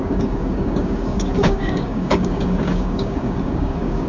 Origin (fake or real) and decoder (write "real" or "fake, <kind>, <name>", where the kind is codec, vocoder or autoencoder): fake, codec, DAC